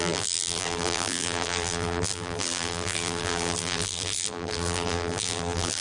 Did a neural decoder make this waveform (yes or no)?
yes